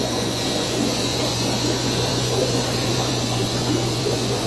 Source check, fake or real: fake